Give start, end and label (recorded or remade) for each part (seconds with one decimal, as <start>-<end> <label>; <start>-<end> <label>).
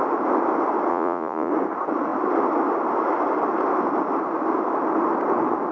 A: 0.0-0.9 recorded; 0.9-1.5 remade; 1.5-5.7 recorded